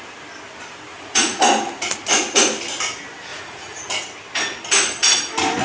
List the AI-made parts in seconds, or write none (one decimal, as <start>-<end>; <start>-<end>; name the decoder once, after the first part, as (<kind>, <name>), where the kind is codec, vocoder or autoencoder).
0.9-1.5 (vocoder, Vocos); 3.3-3.9